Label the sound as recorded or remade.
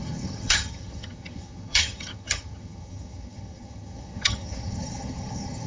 remade